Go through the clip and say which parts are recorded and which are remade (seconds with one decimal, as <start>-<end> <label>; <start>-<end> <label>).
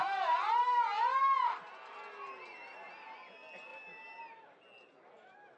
0.0-5.6 recorded